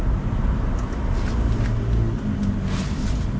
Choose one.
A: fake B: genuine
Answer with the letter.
B